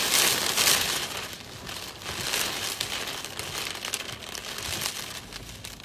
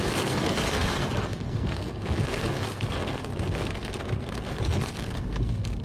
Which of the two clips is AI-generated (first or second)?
second